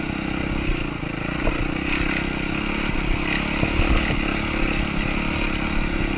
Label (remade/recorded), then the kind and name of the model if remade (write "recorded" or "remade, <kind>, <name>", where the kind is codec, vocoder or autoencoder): recorded